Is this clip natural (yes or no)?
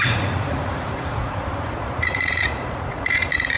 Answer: no